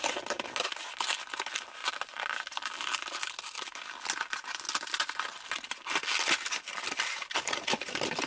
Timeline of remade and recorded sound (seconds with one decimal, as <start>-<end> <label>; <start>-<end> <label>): 0.0-1.8 recorded; 1.8-2.9 remade; 2.9-8.3 recorded